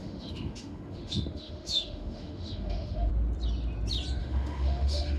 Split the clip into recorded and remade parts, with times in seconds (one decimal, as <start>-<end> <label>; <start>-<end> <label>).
0.0-3.1 remade; 3.1-4.2 recorded; 4.2-5.2 remade